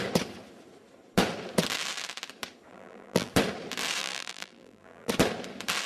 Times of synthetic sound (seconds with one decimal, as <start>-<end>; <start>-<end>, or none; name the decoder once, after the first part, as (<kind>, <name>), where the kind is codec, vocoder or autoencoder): 2.7-3.3 (vocoder, BigVGAN v2); 4.0-5.1